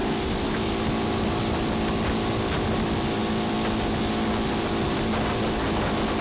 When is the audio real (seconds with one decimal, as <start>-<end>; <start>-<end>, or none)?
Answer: 0.0-6.2